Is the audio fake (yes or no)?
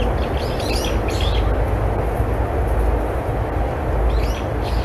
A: no